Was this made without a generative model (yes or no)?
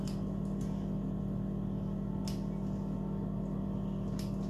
yes